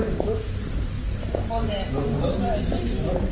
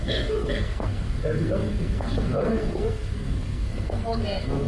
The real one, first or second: first